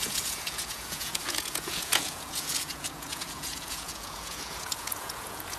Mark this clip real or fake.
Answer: fake